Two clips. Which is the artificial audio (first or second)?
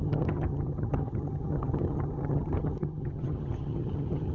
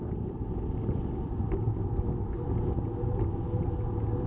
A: first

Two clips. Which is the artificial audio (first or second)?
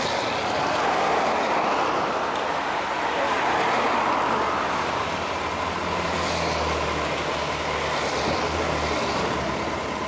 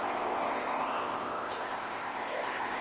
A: second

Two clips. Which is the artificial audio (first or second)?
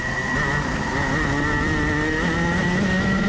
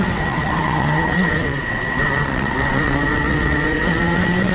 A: second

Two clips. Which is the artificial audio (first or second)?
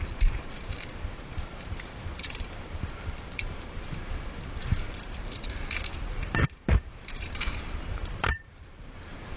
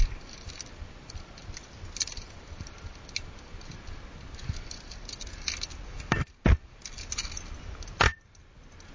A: first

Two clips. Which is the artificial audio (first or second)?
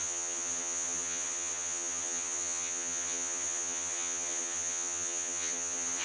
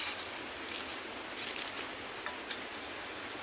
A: first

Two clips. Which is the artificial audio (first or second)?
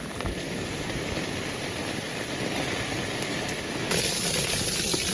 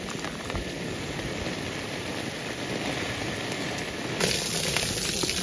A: first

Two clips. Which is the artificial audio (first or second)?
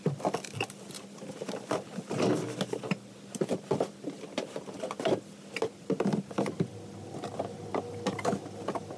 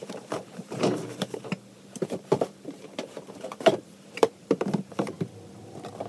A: second